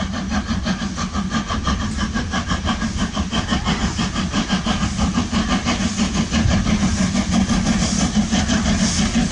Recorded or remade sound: recorded